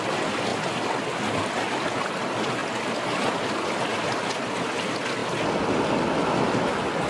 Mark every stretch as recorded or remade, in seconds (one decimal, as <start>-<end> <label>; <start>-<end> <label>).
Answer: 0.0-7.1 recorded